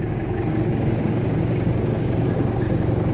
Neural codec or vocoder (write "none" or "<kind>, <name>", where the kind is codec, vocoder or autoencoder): codec, DAC